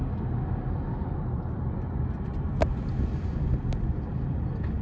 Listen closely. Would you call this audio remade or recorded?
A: recorded